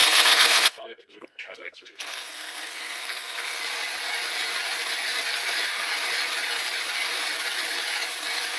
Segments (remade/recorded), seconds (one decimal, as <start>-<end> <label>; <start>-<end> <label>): 0.0-3.6 remade; 3.6-8.6 recorded